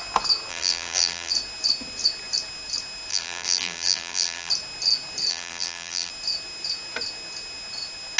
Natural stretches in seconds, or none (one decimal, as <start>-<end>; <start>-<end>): 0.0-0.5; 1.3-3.1; 4.5-5.3; 6.1-8.2